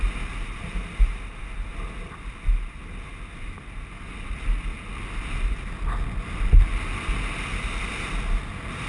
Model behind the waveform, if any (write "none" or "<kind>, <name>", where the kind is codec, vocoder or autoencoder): none